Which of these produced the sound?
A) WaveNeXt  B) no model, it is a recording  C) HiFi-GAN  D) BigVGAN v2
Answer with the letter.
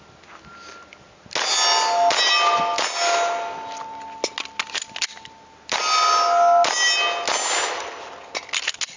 B